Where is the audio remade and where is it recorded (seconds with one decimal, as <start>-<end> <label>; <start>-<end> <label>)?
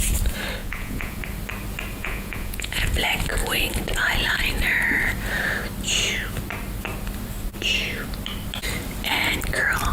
0.0-0.6 recorded; 0.6-1.2 remade; 1.2-2.0 recorded; 2.0-2.9 remade; 2.9-9.9 recorded